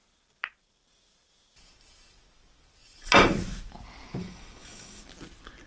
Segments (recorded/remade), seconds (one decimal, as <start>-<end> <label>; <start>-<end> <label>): 0.0-4.2 recorded; 4.2-5.0 remade; 5.0-5.7 recorded